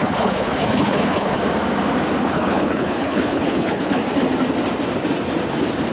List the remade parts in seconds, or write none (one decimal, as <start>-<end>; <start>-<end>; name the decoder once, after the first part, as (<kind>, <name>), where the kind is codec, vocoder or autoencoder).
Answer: 0.0-1.4 (codec, HILCodec); 2.2-4.0